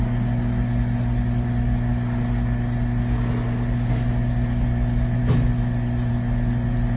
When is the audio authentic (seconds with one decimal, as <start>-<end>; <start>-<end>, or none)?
0.0-7.0

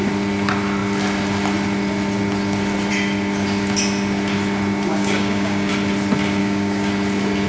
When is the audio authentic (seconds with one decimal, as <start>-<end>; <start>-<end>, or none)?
0.0-4.9; 5.7-6.4; 6.9-7.5

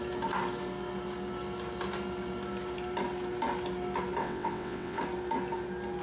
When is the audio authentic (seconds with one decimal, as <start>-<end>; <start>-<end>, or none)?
0.0-4.2; 5.0-6.0

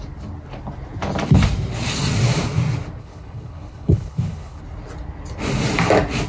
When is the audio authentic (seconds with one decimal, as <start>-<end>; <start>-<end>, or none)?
0.0-3.0; 4.6-6.3